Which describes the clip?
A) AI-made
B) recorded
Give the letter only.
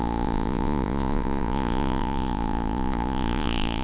A